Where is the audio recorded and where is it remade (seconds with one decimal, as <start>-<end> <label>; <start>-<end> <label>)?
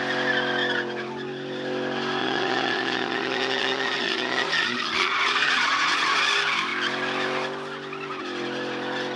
0.0-2.2 recorded; 2.2-6.2 remade; 6.2-9.2 recorded